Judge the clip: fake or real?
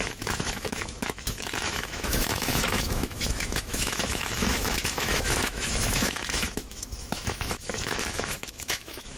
fake